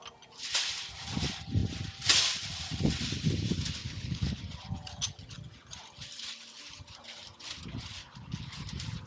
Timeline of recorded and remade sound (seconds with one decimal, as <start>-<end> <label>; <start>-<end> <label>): 0.0-3.8 recorded; 3.8-4.4 remade; 4.4-8.0 recorded; 8.0-8.5 remade; 8.5-9.1 recorded